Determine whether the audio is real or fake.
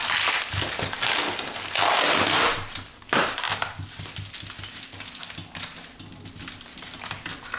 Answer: real